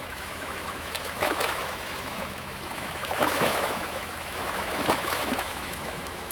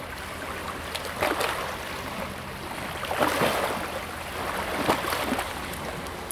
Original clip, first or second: second